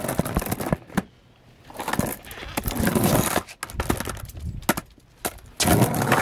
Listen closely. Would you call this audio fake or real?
real